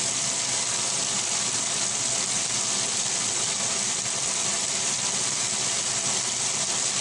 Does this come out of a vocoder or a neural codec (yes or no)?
no